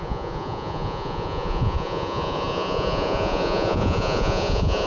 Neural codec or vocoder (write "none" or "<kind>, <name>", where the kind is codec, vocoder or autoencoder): vocoder, Vocos